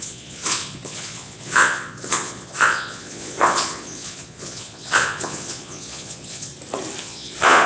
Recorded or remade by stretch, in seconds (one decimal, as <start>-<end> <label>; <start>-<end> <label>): 0.0-6.5 remade; 6.5-7.0 recorded; 7.0-7.7 remade